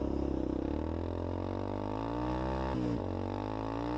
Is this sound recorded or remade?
recorded